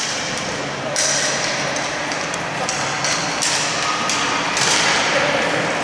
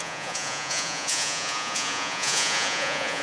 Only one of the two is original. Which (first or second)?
first